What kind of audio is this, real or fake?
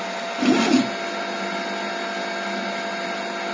real